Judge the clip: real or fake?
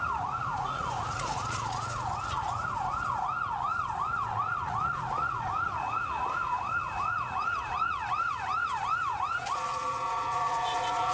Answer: fake